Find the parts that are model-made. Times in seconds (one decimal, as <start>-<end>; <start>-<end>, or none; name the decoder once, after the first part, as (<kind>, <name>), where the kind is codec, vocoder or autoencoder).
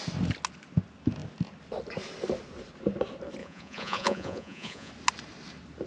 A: 3.4-4.9 (vocoder, Vocos)